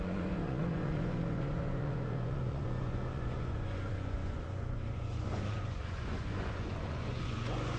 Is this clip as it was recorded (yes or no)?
no